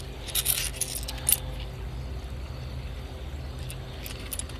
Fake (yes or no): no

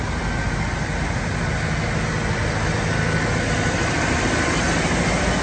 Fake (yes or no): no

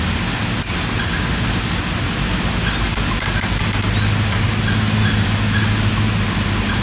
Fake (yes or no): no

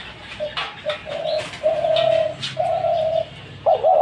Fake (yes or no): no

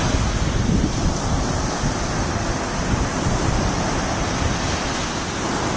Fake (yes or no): no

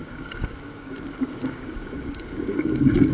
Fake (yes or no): yes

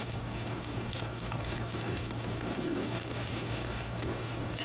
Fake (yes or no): yes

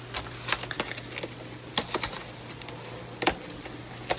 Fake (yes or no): no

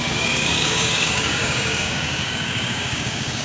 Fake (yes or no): yes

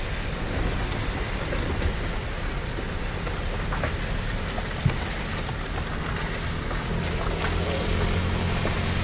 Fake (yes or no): no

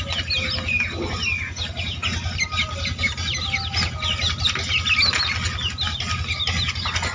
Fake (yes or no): no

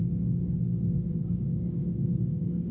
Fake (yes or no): yes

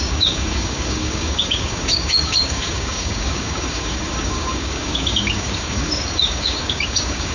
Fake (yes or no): yes